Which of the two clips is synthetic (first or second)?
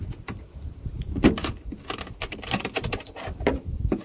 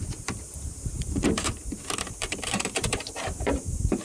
second